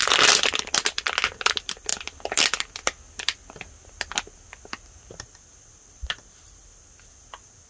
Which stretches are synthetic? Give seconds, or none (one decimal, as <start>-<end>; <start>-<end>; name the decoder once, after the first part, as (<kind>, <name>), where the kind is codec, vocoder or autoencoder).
none